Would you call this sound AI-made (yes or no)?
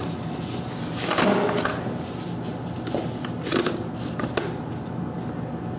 no